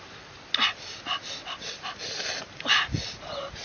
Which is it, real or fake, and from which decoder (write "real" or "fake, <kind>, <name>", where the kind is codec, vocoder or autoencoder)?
real